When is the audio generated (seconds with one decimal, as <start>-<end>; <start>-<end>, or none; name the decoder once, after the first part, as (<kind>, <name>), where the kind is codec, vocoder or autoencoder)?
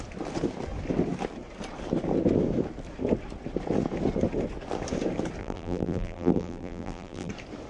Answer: 5.4-7.3 (vocoder, BigVGAN v2)